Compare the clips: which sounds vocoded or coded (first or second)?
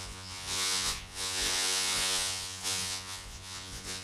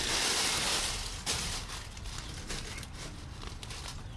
first